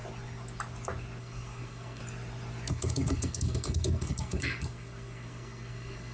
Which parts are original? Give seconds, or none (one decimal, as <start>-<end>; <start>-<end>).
0.0-1.2; 2.0-2.7